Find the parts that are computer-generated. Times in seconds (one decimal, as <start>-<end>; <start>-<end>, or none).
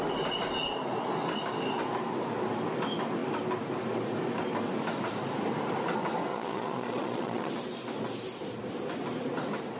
6.3-7.5